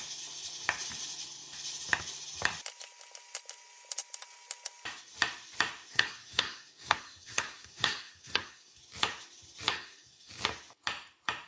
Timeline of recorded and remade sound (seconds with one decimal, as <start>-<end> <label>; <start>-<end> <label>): 0.0-5.9 recorded; 5.9-8.8 remade; 8.8-9.7 recorded; 9.7-10.3 remade; 10.3-11.5 recorded